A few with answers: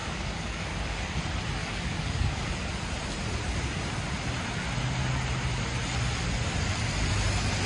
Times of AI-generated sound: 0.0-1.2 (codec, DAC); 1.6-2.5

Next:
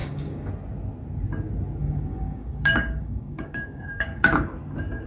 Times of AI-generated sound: 0.0-0.5 (codec, DAC); 1.8-4.3

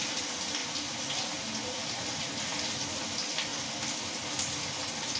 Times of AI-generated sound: none

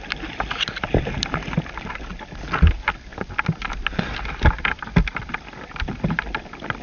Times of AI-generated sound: none

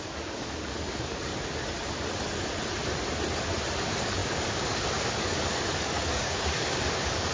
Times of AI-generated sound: 0.0-1.3 (codec, DAC); 3.8-7.3

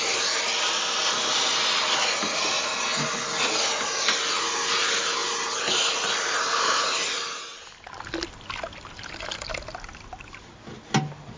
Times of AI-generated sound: none

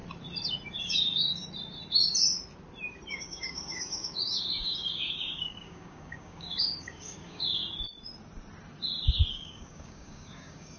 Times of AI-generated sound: 0.8-1.4 (codec, DAC); 3.1-7.6; 9.3-10.8